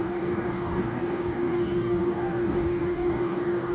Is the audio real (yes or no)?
no